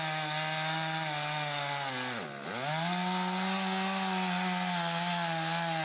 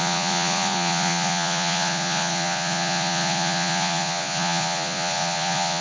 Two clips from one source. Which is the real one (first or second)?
first